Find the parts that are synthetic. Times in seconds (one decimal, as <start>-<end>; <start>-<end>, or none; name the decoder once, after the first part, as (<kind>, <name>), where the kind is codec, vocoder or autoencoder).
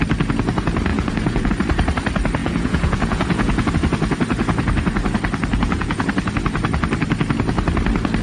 0.9-1.5 (vocoder, Vocos); 2.4-3.7; 5.5-6.1